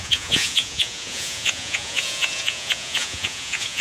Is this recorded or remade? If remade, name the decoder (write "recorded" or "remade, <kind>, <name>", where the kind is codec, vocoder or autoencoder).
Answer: remade, vocoder, Vocos